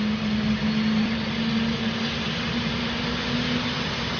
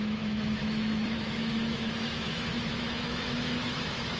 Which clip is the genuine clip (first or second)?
first